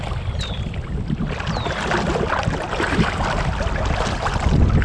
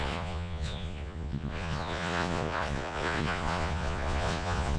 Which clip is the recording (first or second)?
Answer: first